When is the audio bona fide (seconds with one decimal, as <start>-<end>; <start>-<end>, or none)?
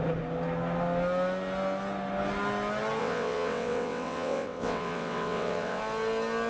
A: 0.0-3.0; 5.8-6.5